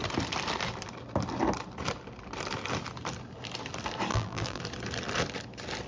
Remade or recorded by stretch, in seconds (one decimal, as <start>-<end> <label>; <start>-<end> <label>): 0.0-4.1 recorded; 4.1-4.6 remade; 4.6-5.9 recorded